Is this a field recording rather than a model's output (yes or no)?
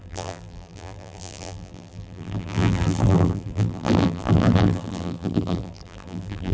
no